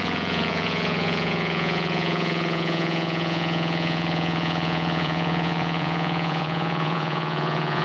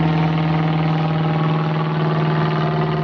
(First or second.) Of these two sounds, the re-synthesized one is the first